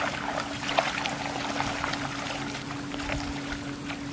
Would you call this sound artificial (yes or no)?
no